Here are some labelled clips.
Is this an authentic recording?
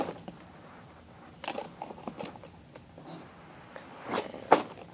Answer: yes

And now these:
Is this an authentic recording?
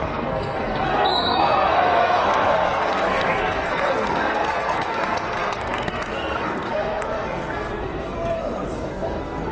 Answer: no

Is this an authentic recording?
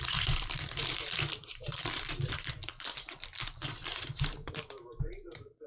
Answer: no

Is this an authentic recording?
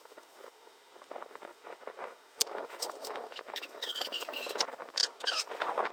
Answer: no